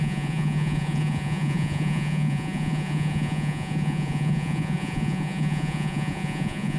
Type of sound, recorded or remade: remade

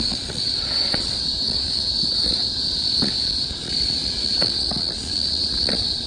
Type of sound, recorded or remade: remade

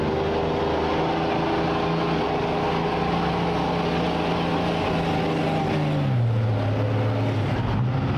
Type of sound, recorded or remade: recorded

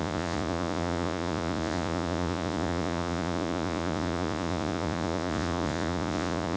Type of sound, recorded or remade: remade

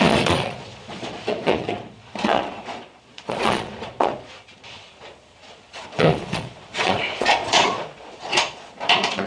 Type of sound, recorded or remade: remade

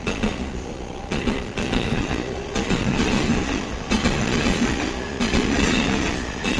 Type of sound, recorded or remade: remade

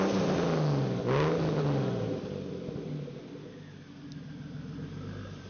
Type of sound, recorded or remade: recorded